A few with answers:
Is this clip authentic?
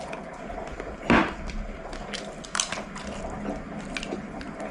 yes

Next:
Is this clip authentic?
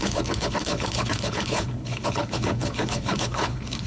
no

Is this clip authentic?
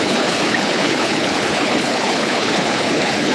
no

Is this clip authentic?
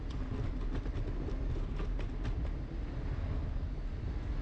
yes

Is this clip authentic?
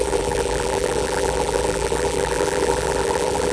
no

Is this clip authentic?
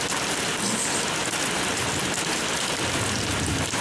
yes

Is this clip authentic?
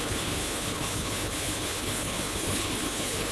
no